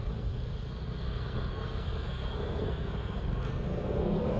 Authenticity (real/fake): fake